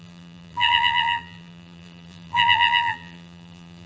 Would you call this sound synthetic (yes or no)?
yes